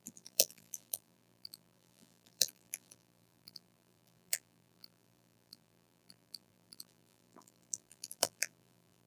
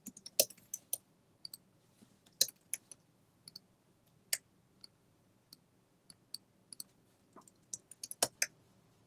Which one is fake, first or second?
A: first